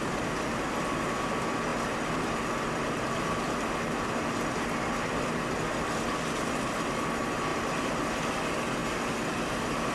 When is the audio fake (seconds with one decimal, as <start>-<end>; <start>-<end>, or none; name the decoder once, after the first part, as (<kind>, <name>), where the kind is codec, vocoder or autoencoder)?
7.5-8.0 (vocoder, BigVGAN v2)